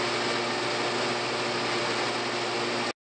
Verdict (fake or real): real